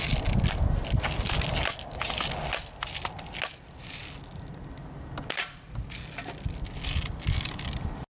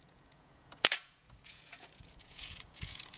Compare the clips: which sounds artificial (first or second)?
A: second